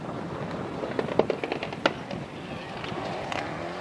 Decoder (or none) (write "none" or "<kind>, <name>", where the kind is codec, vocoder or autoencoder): none